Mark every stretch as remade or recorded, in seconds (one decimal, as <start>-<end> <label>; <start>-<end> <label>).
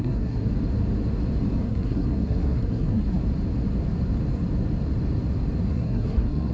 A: 0.0-0.5 remade; 0.5-1.6 recorded; 1.6-3.2 remade; 3.2-5.7 recorded; 5.7-6.5 remade